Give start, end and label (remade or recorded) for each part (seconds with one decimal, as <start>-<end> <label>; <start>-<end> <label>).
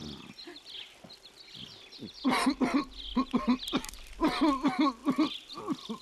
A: 0.0-6.0 recorded